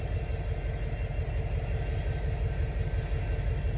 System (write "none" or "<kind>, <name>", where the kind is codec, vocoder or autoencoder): none